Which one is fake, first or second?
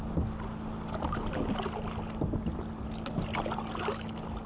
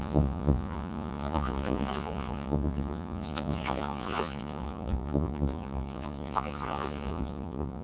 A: second